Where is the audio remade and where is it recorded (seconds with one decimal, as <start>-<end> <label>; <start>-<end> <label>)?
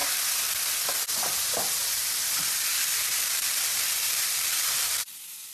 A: 0.0-1.3 recorded; 1.3-2.0 remade; 2.0-2.7 recorded; 2.7-5.5 remade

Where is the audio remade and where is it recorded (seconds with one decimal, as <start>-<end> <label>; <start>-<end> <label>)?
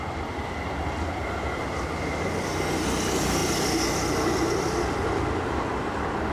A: 0.0-6.3 recorded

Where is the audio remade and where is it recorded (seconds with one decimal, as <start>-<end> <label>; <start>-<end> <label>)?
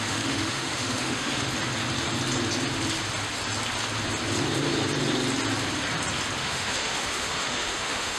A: 0.0-1.5 remade; 1.5-6.4 recorded; 6.4-8.2 remade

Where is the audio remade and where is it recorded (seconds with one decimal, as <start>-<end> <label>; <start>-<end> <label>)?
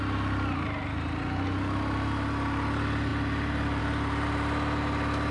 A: 0.0-5.3 recorded